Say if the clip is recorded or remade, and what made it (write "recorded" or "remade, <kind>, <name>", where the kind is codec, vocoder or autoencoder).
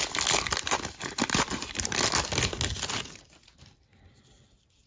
recorded